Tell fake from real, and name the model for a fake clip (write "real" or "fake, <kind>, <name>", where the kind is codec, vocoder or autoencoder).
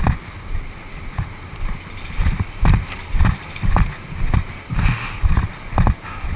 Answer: real